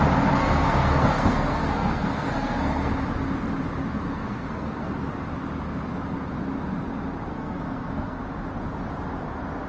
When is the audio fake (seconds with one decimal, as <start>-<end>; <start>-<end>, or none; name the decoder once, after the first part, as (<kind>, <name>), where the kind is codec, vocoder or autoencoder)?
0.4-2.9 (codec, SNAC); 4.0-4.9; 7.3-8.2